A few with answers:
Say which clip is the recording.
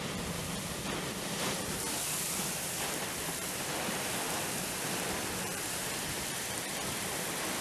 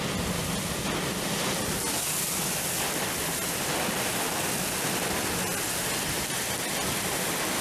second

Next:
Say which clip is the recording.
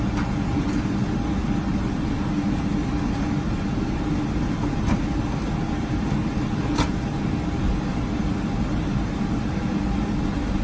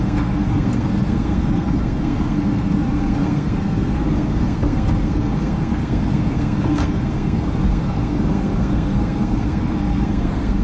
first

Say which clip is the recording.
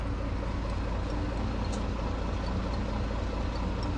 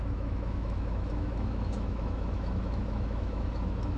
first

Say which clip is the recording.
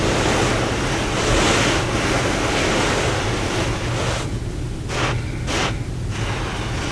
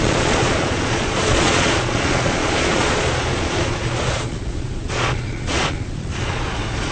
first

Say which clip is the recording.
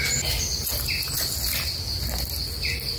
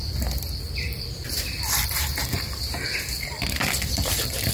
first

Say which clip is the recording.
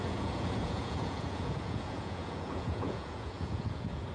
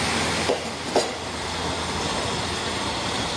second